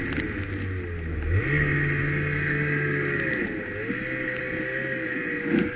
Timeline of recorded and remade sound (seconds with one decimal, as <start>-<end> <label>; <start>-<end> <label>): 0.0-5.8 recorded